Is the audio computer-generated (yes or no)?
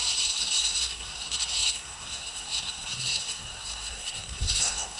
yes